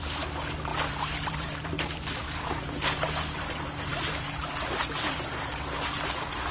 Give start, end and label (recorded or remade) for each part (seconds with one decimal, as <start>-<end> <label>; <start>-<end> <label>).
0.0-0.7 recorded; 0.7-3.0 remade; 3.0-3.9 recorded; 3.9-5.5 remade; 5.5-6.5 recorded